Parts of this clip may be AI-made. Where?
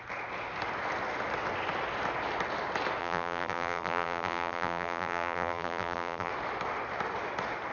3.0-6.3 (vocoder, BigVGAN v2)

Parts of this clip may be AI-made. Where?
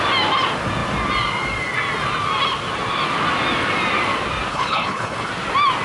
4.5-5.3 (codec, HILCodec)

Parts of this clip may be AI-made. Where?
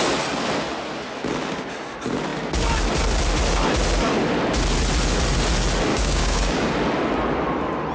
5.9-6.7 (codec, DAC)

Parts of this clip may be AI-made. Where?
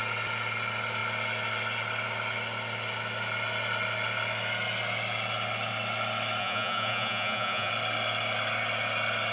6.4-7.7 (vocoder, Vocos)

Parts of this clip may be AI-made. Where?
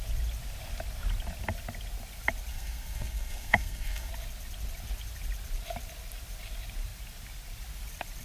2.5-4.1 (codec, SNAC)